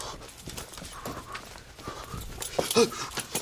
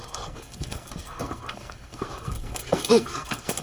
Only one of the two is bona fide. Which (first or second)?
first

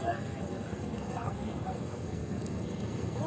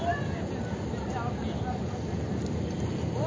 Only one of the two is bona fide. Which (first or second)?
second